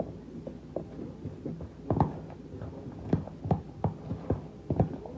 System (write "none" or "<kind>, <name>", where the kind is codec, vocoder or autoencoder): none